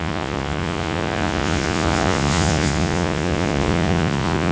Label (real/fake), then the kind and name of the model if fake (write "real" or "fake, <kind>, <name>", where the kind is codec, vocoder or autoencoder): fake, vocoder, Vocos